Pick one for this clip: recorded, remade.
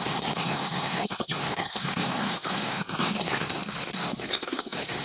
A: remade